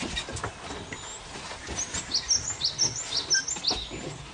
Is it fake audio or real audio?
real